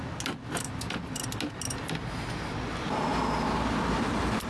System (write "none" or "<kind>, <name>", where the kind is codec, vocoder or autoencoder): none